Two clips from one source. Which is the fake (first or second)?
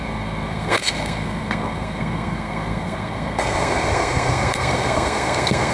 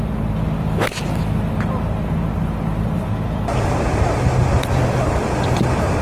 first